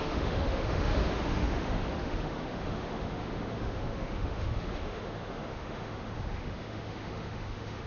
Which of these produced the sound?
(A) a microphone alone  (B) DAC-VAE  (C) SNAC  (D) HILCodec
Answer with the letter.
B